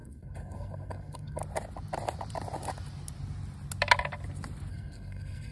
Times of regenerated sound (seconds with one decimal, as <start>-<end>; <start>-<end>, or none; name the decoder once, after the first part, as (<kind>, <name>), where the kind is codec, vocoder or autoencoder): 0.0-1.4 (codec, SNAC); 4.7-5.5